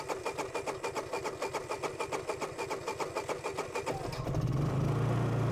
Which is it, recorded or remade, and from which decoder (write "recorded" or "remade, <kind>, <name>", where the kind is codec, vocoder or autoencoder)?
recorded